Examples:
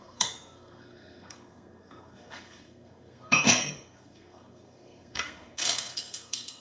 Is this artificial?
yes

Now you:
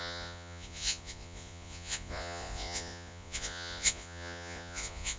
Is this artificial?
yes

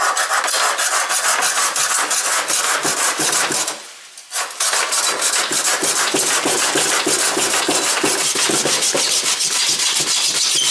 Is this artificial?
no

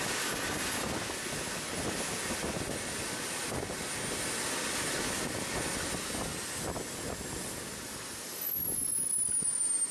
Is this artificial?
no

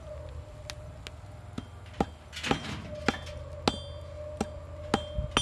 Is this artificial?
no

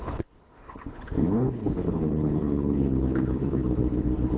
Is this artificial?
yes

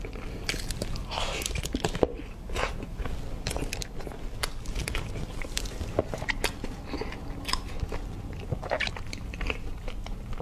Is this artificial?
no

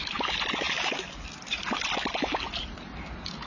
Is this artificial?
no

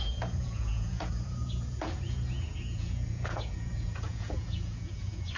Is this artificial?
yes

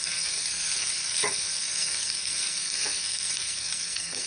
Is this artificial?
yes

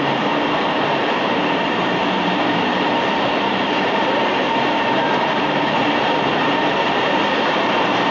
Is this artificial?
yes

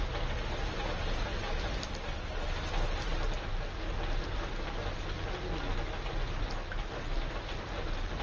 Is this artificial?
no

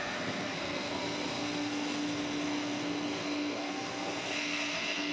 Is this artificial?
yes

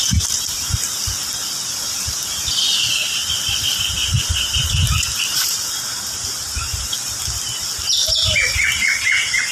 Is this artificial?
no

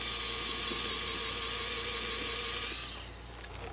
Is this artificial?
no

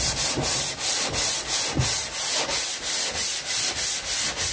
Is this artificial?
no